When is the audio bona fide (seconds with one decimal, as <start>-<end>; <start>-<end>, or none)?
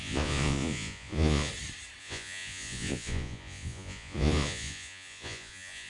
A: 1.5-2.0